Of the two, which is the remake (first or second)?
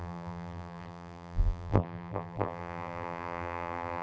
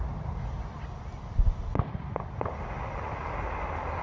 first